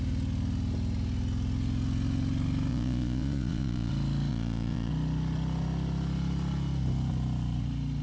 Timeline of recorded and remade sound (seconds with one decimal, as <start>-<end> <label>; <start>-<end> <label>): 0.0-2.7 recorded; 2.7-3.9 remade; 3.9-4.3 recorded; 4.3-4.9 remade; 4.9-8.0 recorded